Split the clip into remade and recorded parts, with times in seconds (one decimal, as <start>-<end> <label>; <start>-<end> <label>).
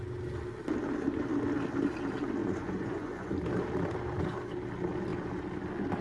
0.0-2.4 recorded; 2.4-3.3 remade; 3.3-6.0 recorded